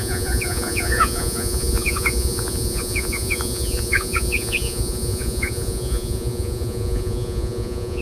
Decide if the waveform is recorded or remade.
remade